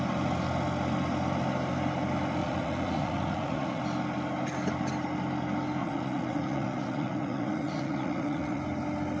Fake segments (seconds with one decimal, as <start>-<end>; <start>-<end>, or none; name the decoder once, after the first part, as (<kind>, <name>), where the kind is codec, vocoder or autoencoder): 2.4-3.8 (vocoder, Vocos); 5.8-8.6